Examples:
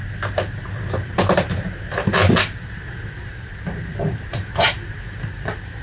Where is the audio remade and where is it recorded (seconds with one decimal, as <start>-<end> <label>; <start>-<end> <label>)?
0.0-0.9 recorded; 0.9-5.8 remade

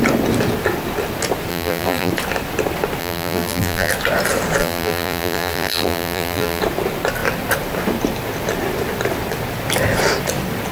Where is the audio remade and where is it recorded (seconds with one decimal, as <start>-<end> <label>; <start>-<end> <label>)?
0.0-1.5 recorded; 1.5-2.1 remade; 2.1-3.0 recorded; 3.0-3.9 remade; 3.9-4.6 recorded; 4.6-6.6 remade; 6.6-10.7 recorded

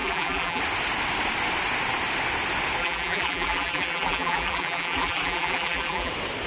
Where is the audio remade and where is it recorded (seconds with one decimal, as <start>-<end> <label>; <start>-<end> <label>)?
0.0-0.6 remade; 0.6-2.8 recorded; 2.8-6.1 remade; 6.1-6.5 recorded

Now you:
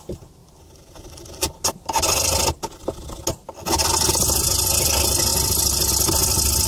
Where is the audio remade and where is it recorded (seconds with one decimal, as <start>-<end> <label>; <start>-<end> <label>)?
0.0-6.7 recorded